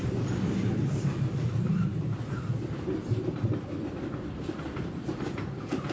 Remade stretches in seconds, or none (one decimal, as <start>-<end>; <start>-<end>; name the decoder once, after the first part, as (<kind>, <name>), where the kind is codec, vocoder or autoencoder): 0.0-1.9 (vocoder, BigVGAN v2); 4.5-5.9